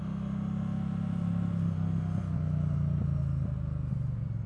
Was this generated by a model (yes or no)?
no